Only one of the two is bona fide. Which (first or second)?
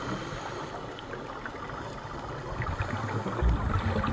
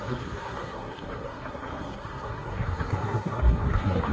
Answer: first